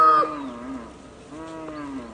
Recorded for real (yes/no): yes